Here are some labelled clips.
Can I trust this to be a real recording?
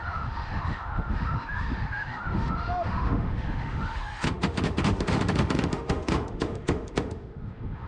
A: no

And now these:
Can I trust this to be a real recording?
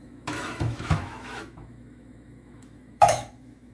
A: no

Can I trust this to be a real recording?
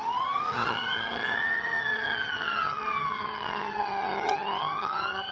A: no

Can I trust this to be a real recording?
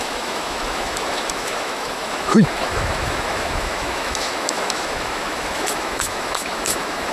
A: no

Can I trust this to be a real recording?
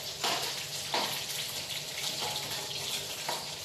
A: yes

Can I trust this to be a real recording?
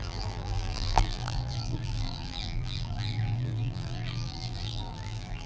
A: no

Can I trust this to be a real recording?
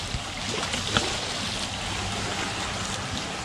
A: yes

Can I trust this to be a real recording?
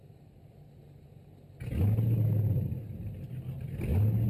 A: yes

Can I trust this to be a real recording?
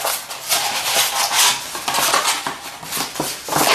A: yes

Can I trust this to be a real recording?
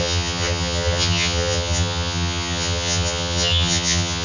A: no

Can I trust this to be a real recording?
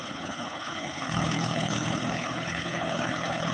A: no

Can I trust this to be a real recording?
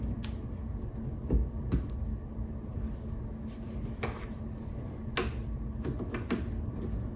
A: yes